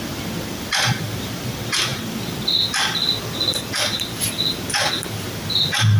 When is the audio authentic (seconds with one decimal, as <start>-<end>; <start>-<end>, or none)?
0.0-6.0